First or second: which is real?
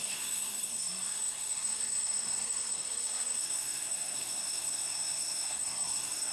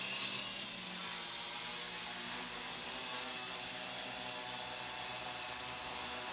second